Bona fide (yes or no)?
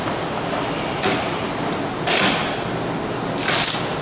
yes